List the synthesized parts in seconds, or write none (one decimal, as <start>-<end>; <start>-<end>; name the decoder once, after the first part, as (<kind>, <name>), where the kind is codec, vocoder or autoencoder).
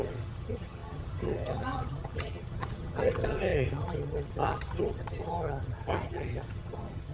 0.0-7.1 (vocoder, HiFi-GAN)